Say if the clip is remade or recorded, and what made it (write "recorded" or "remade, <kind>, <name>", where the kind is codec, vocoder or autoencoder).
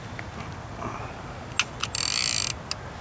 recorded